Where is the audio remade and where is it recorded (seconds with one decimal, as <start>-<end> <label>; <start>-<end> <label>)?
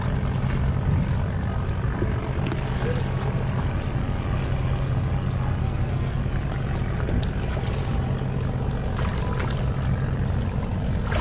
0.0-5.6 recorded; 5.6-6.2 remade; 6.2-11.2 recorded